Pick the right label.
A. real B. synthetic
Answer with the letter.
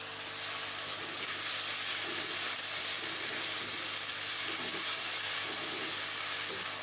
A